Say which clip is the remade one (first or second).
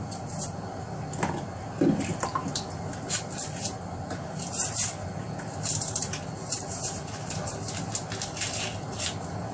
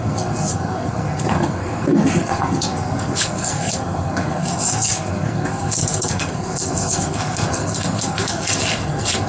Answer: second